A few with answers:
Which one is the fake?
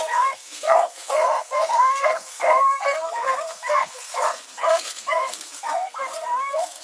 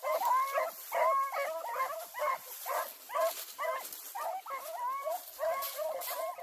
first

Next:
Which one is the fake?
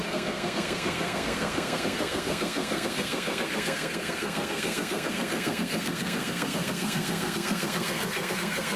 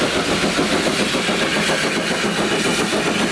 first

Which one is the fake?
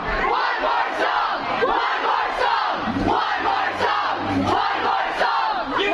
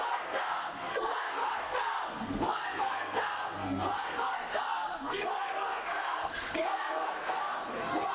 second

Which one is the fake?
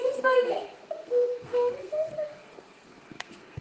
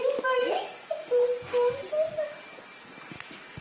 first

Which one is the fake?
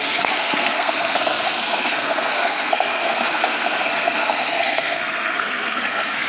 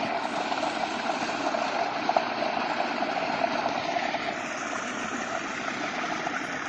first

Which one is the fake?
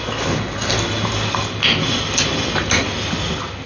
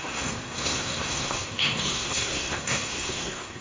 second